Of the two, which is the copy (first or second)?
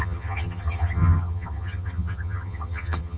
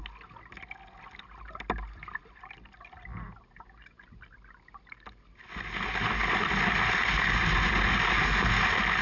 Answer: first